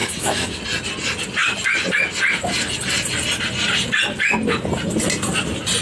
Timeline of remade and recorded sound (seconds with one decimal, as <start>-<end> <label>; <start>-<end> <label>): 0.0-0.6 remade; 0.6-5.8 recorded